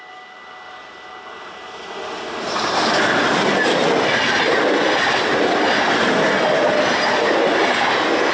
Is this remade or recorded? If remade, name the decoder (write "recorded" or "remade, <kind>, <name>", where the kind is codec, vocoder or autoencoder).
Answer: recorded